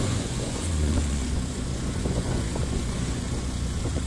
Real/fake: fake